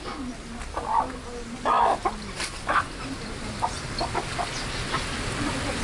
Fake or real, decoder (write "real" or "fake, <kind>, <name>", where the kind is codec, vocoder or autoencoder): real